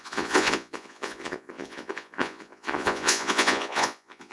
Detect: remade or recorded remade